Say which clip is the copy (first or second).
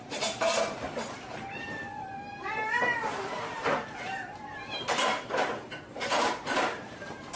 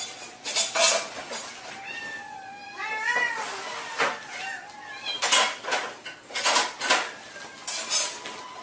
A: first